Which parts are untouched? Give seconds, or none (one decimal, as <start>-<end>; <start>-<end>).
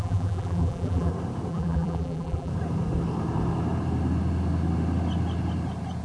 1.1-1.5; 2.5-6.0